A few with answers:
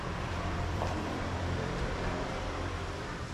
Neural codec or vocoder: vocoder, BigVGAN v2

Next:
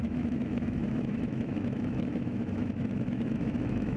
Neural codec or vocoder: autoencoder, DAC-VAE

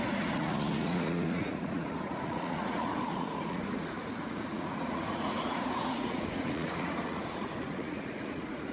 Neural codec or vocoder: vocoder, Vocos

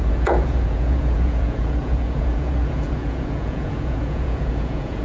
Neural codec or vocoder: vocoder, Vocos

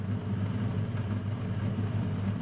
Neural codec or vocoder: none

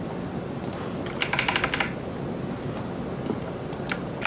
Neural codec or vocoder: none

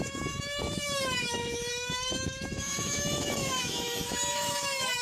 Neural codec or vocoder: autoencoder, DAC-VAE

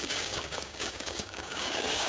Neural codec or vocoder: codec, DAC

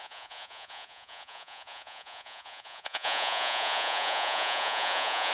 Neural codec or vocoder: vocoder, Vocos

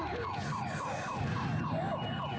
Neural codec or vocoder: none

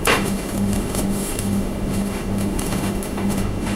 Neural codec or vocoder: autoencoder, DAC-VAE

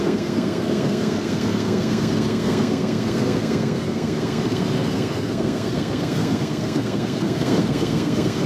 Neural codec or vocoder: codec, SNAC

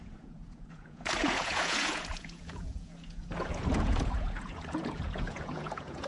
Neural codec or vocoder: vocoder, Vocos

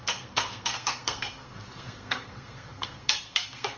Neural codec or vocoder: codec, SNAC